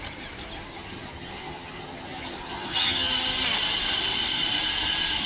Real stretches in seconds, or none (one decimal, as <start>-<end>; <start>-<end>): 0.0-0.7; 3.1-5.3